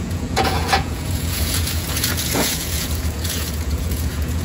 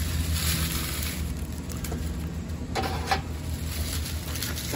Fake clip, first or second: first